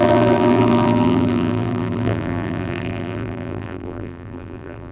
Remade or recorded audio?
remade